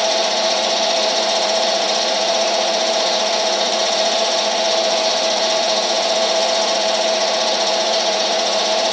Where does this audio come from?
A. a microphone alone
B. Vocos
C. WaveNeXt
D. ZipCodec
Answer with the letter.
B